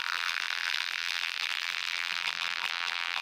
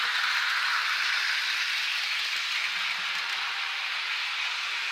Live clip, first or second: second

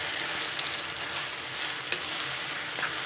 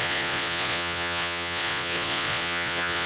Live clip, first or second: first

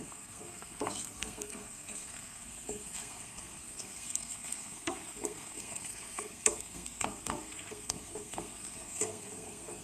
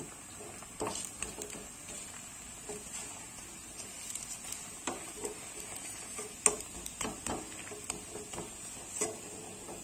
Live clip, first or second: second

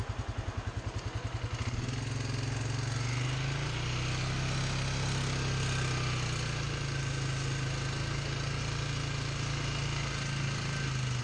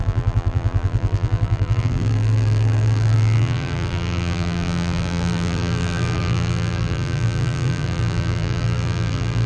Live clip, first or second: first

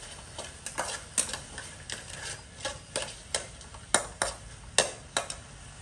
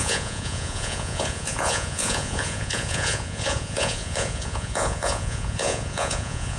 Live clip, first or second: first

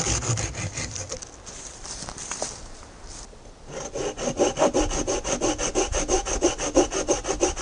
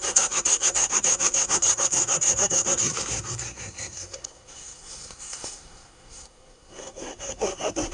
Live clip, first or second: first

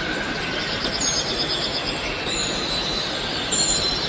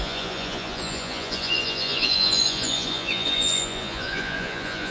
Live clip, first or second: first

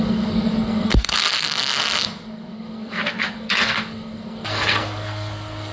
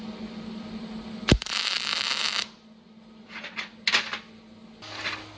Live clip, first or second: second